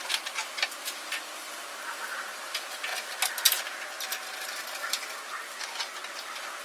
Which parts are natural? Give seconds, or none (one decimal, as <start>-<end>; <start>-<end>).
0.0-6.6